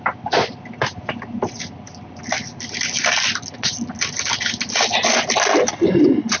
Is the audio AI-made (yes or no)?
no